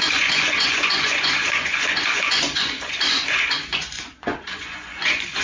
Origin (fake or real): fake